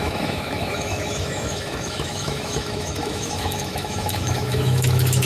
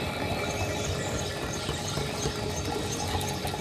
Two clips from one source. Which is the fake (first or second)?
first